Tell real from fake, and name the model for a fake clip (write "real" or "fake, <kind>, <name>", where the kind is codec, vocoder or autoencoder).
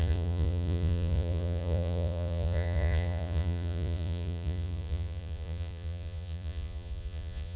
fake, vocoder, Vocos